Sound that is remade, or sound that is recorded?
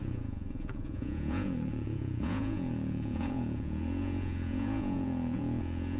remade